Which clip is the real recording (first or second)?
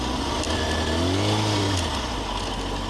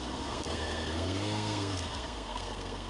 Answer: first